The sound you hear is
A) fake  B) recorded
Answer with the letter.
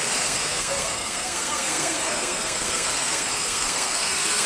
A